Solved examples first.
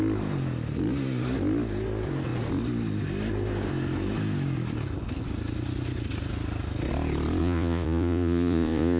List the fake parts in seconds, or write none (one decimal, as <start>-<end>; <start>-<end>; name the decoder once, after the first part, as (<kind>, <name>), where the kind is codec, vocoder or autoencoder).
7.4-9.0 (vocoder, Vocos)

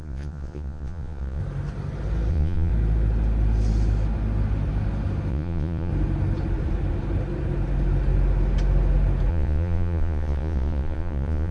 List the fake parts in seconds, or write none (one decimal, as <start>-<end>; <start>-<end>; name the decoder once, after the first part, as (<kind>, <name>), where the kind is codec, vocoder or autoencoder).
0.0-1.4 (vocoder, Vocos); 2.3-2.7; 5.3-5.9; 9.3-11.5

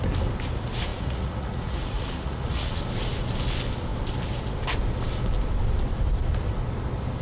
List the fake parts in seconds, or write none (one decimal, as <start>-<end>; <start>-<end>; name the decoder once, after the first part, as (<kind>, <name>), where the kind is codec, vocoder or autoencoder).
0.9-2.8 (vocoder, Vocos)

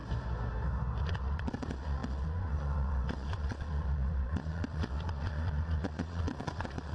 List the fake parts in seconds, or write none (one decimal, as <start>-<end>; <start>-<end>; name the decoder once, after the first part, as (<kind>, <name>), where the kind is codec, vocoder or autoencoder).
1.0-6.9 (vocoder, Vocos)

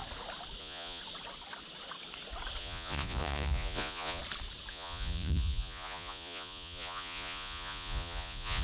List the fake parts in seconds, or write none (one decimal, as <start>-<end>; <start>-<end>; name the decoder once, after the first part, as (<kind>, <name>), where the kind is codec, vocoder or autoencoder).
0.6-1.0 (vocoder, Vocos); 2.6-4.2; 4.7-8.6